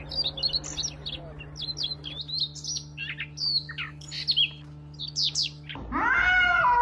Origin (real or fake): real